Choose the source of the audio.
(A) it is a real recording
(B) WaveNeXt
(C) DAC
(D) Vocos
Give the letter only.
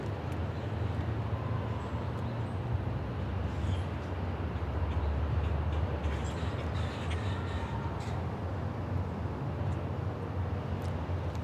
A